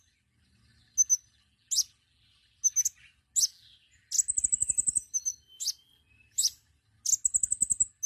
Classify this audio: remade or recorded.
recorded